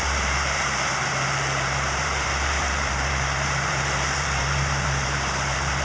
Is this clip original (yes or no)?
no